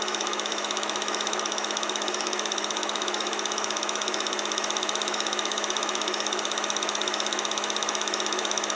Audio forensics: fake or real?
fake